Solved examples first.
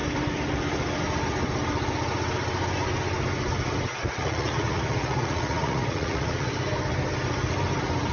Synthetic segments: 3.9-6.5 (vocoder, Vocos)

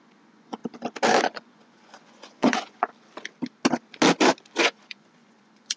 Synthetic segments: 0.0-0.6 (vocoder, Vocos); 1.2-2.9; 4.6-5.8

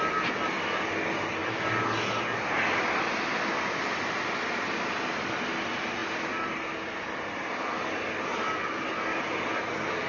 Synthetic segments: none

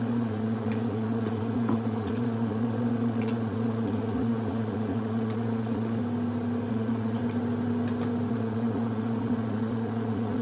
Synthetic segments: 0.0-6.0 (vocoder, Vocos); 6.7-7.2; 8.3-10.4

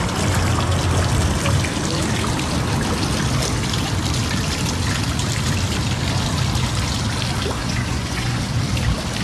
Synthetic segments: 7.6-8.4 (vocoder, Vocos)

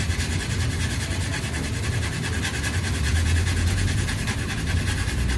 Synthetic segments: 3.1-4.2 (vocoder, Vocos)

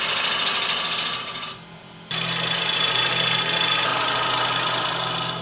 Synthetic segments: none